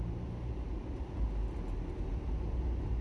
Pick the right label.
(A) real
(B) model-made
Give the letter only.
A